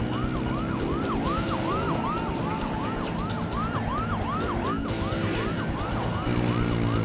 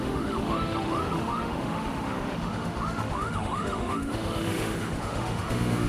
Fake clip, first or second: second